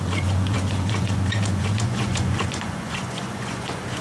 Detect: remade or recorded remade